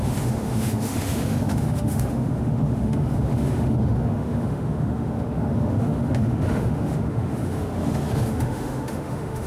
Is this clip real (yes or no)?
no